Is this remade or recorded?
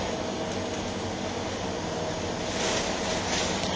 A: recorded